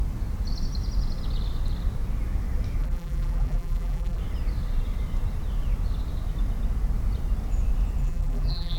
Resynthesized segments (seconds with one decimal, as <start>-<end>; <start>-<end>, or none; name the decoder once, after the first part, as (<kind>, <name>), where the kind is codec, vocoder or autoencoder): 2.8-4.2 (vocoder, BigVGAN v2); 8.0-8.8